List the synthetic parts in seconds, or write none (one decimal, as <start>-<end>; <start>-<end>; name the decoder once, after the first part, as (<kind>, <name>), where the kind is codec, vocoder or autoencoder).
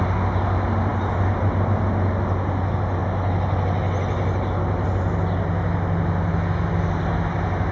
none